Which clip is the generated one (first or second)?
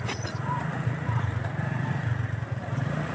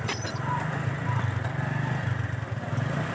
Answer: first